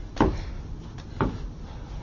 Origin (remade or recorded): recorded